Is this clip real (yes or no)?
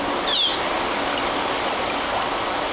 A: no